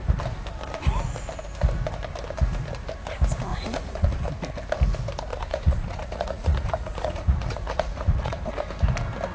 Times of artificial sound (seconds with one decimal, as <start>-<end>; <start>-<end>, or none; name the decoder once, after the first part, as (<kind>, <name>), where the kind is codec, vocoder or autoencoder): 3.5-4.3 (vocoder, Vocos); 5.3-8.5